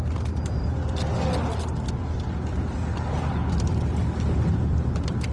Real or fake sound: real